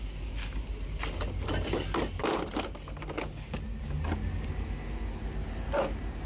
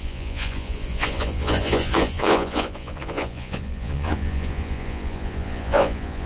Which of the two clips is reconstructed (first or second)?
second